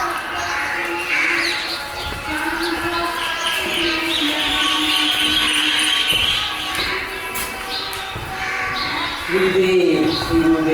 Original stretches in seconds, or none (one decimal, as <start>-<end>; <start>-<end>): 0.0-0.8; 4.4-10.7